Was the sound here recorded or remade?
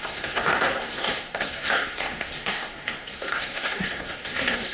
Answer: remade